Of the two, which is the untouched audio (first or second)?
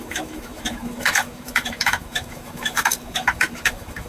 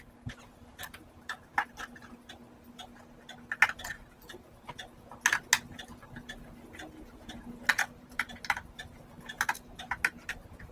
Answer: second